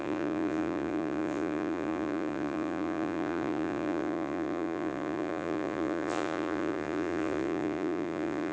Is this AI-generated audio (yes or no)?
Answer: yes